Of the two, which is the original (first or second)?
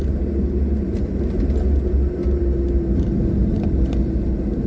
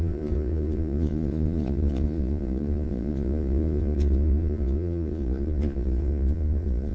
first